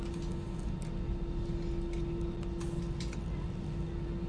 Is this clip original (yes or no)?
yes